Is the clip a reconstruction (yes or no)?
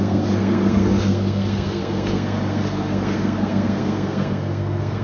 yes